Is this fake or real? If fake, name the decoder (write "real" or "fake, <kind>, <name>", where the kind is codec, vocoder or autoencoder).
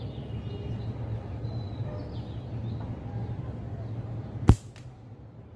real